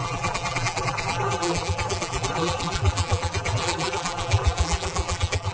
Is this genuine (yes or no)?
no